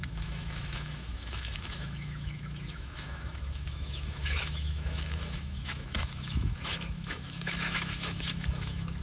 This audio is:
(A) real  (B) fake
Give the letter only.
B